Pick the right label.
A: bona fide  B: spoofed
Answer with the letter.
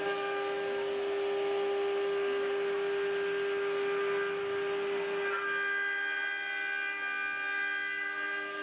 A